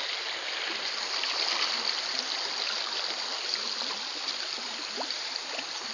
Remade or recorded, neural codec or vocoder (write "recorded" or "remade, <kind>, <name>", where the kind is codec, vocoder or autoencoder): recorded